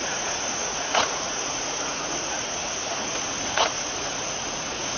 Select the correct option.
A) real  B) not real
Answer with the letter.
B